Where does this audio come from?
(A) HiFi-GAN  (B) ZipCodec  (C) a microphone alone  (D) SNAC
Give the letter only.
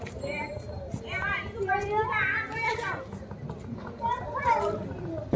C